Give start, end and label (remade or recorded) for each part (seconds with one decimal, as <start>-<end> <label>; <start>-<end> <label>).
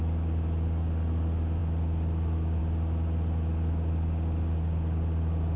0.0-5.6 recorded